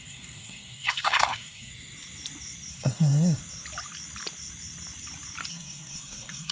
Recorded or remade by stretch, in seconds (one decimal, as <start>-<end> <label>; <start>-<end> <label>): 0.0-1.7 remade; 1.7-2.7 recorded; 2.7-3.4 remade; 3.4-5.5 recorded; 5.5-6.5 remade